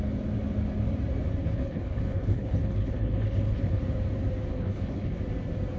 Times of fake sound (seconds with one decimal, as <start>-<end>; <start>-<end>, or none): 1.4-3.8; 4.5-5.2